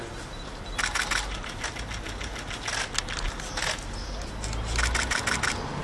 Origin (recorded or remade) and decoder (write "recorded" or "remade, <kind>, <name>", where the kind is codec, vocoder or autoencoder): recorded